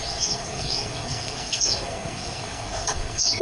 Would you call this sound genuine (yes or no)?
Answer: no